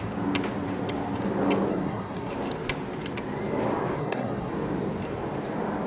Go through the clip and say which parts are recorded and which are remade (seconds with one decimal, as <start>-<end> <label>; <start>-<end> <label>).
0.0-1.7 recorded; 1.7-2.3 remade; 2.3-4.0 recorded; 4.0-4.5 remade; 4.5-5.9 recorded